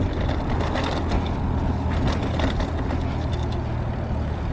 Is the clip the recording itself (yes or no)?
yes